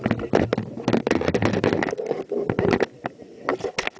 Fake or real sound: real